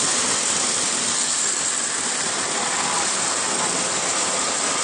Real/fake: real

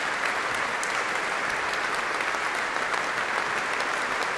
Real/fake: real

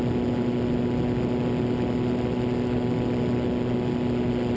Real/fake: real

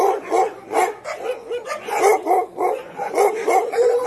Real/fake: fake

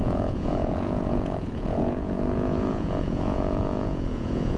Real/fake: fake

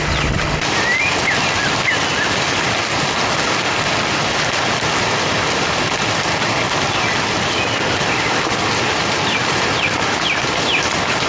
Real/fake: real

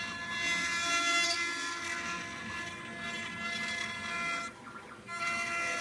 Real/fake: real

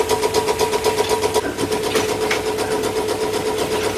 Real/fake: real